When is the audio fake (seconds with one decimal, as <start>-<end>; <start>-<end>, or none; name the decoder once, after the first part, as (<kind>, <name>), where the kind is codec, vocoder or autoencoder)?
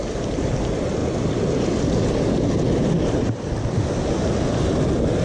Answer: none